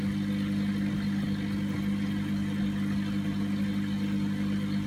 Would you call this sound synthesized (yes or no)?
no